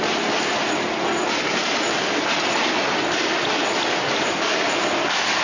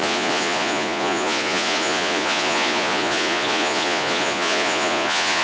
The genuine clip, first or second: first